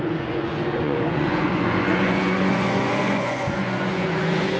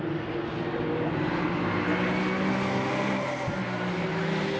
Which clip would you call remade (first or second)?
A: first